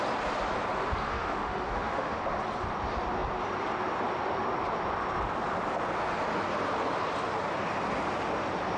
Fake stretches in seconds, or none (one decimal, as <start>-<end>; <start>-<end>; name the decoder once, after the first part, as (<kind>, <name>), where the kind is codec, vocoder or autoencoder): 1.0-2.2 (autoencoder, DAC-VAE)